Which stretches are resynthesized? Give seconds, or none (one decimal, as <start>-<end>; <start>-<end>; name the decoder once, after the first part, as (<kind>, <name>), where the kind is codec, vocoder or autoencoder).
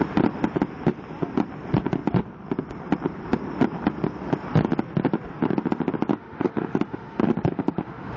6.1-8.2 (autoencoder, DAC-VAE)